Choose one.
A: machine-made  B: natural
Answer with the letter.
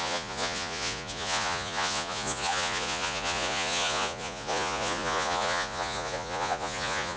A